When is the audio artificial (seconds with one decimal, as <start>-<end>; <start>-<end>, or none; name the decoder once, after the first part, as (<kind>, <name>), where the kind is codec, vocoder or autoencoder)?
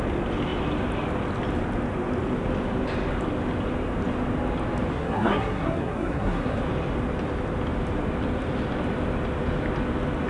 4.9-6.6 (codec, SNAC)